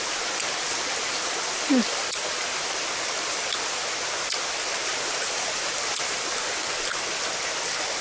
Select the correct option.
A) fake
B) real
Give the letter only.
B